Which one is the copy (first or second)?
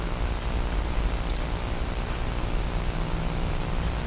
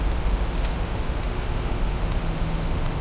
second